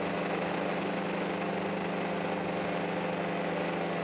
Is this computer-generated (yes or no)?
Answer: no